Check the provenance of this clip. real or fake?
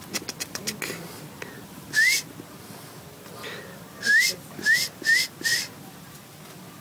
real